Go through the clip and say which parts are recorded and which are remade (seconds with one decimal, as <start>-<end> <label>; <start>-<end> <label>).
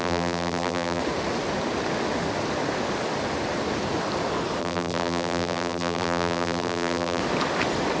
0.0-1.0 remade; 1.0-4.6 recorded; 4.6-7.2 remade; 7.2-8.0 recorded